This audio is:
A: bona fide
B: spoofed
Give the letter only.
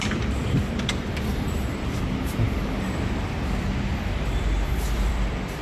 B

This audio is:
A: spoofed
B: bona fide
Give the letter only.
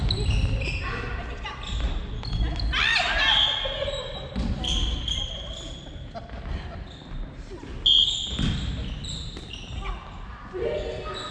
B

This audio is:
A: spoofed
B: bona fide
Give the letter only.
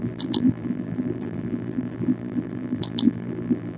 A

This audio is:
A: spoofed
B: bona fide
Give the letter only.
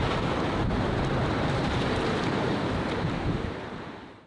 A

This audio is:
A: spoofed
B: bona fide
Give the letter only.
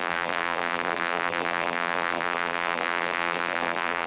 A